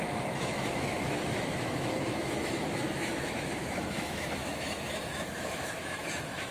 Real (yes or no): no